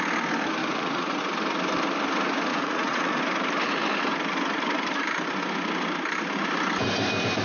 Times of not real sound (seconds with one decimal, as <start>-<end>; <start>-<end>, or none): 0.6-1.2; 2.5-3.2